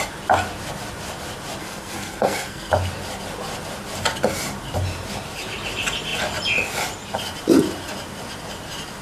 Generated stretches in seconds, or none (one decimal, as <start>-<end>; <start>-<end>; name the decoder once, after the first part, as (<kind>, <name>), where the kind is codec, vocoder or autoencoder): 1.6-2.7 (codec, SNAC)